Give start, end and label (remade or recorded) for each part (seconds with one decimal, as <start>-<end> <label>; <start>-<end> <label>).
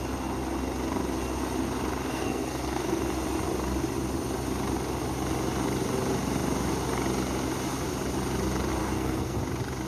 0.0-2.1 recorded; 2.1-3.0 remade; 3.0-8.8 recorded; 8.8-9.4 remade; 9.4-9.9 recorded